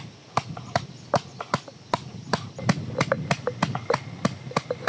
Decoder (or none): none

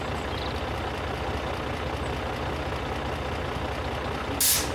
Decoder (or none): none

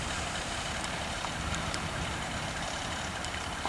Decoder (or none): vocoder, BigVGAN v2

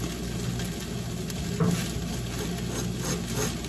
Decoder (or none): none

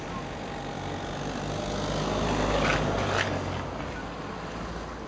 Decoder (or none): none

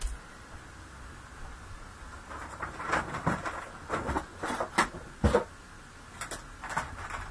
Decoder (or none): none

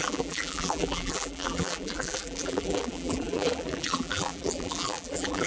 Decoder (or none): vocoder, BigVGAN v2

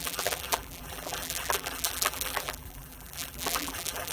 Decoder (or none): vocoder, BigVGAN v2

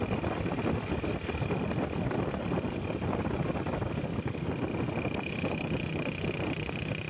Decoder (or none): none